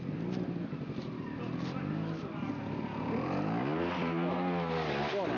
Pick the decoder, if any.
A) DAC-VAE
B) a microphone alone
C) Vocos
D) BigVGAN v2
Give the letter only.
B